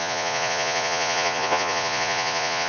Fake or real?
fake